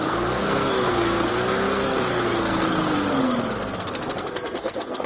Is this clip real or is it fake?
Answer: fake